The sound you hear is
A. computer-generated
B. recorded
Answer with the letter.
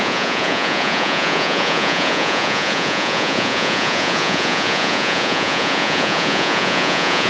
A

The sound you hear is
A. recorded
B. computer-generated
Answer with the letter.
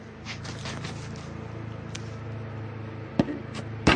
A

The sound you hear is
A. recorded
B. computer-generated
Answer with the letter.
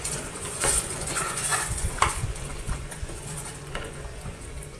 B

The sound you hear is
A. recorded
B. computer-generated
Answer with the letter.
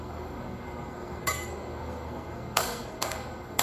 B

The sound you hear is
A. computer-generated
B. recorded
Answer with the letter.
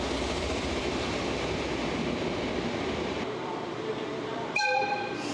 A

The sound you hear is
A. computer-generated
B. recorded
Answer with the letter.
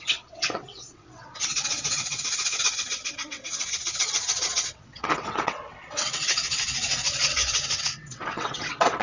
A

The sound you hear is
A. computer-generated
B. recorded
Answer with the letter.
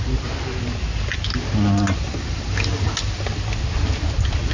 B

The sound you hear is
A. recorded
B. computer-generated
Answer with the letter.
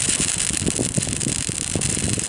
A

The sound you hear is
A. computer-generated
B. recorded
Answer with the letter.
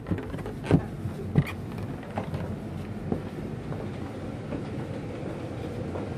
B